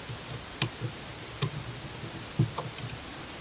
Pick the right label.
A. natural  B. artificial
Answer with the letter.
A